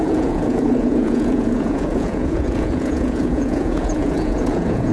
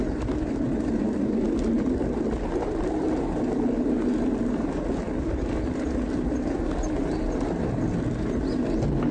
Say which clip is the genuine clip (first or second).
second